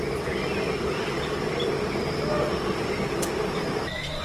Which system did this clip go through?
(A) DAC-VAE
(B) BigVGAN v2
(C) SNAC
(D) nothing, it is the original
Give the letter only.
D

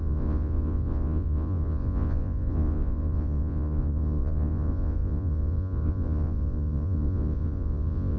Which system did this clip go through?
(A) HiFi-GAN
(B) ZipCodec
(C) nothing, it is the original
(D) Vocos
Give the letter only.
D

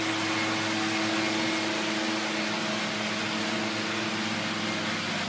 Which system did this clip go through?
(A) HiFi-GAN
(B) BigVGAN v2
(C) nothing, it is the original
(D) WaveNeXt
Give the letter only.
C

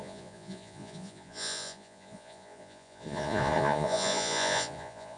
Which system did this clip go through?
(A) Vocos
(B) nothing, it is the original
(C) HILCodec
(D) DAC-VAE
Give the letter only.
A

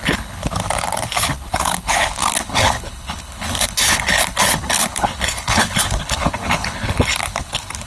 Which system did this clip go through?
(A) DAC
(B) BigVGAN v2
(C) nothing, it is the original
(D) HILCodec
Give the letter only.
D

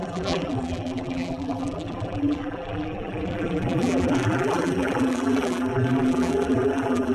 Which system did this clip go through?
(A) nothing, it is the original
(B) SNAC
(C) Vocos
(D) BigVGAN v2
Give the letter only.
D